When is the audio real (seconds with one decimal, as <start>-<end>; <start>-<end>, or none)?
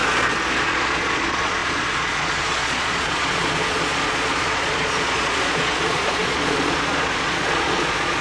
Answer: 0.0-0.6